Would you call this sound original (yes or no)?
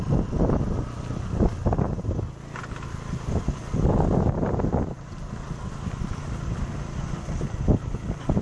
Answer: yes